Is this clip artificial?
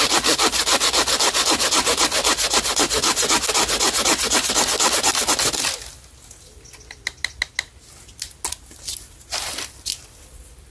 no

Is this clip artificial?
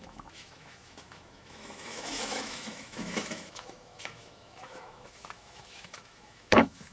yes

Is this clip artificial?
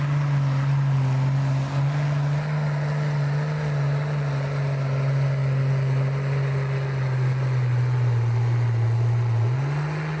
no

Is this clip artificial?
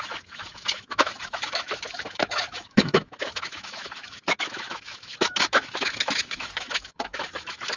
yes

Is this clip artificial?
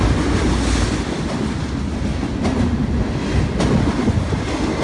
no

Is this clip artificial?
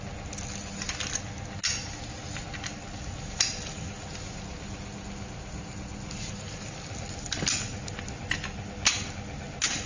no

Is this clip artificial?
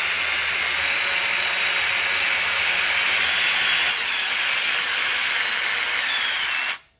no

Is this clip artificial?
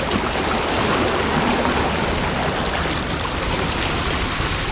no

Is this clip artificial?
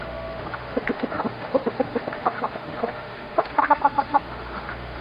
yes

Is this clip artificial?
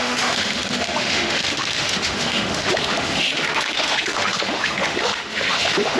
yes